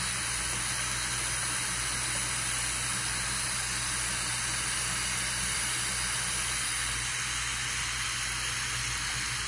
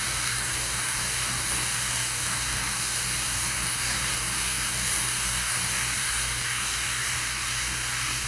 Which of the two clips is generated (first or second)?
second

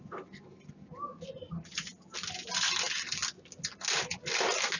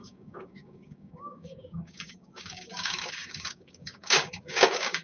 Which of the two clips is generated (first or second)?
second